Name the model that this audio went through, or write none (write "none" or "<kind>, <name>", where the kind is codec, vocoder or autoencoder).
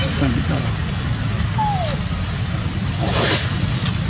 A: none